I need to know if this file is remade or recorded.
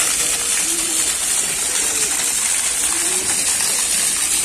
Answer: recorded